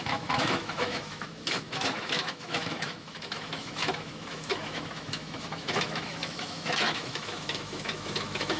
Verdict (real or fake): fake